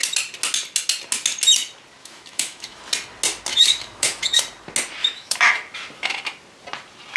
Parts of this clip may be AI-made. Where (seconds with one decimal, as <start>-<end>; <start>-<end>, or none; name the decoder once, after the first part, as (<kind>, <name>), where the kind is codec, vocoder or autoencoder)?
2.0-2.8 (autoencoder, DAC-VAE); 3.5-4.4; 5.0-5.5